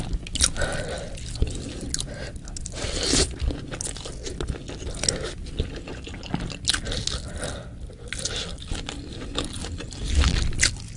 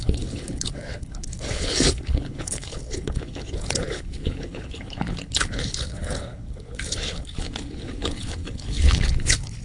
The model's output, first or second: second